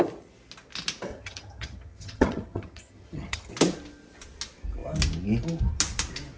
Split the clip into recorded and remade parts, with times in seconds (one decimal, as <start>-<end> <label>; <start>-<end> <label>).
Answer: 0.0-1.1 recorded; 1.1-3.5 remade; 3.5-6.4 recorded